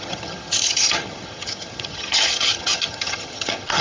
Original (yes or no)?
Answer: no